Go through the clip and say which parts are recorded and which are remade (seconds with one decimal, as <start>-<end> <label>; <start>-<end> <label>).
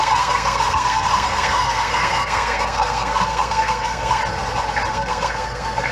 0.0-4.2 remade; 4.2-4.9 recorded; 4.9-5.9 remade